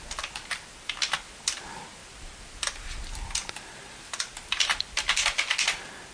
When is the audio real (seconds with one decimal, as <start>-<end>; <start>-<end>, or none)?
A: 0.0-6.1